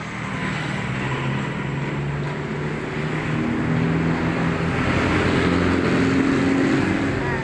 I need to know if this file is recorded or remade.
recorded